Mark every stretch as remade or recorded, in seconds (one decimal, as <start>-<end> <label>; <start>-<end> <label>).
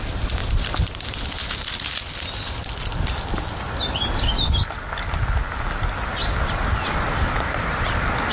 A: 0.0-8.3 recorded